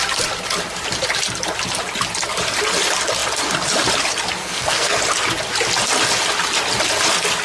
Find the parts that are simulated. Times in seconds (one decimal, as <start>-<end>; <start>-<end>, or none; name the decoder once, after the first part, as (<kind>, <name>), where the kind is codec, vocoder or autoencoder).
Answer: 4.4-5.0 (codec, SNAC)